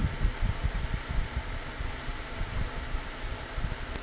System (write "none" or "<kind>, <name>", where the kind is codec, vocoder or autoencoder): none